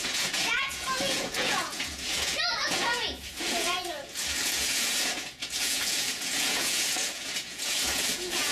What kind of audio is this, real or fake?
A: fake